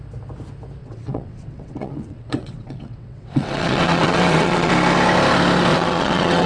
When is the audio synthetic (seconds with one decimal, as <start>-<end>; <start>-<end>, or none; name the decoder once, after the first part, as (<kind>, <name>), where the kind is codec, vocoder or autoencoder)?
0.8-4.7 (vocoder, WaveNeXt); 5.7-6.5